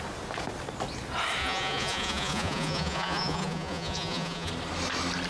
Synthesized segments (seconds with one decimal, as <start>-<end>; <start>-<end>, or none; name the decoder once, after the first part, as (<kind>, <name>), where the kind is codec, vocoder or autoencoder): 1.4-4.5 (vocoder, Vocos)